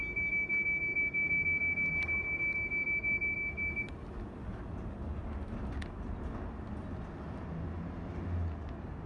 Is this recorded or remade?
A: recorded